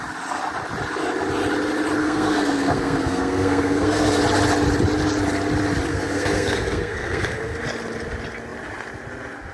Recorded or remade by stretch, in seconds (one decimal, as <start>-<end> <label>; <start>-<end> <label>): 0.0-2.0 recorded; 2.0-4.2 remade; 4.2-5.9 recorded; 5.9-7.6 remade; 7.6-9.5 recorded